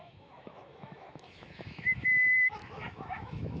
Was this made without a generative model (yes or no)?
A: no